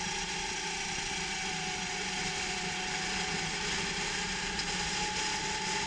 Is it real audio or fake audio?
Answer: real